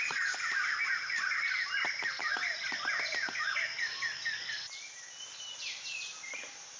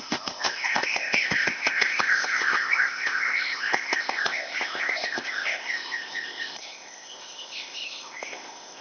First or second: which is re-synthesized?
second